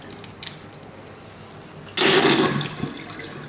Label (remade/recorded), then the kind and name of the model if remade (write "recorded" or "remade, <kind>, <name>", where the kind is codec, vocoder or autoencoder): recorded